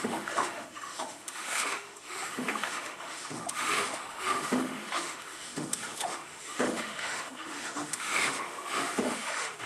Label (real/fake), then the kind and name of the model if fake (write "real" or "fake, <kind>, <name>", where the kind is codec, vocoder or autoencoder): fake, autoencoder, DAC-VAE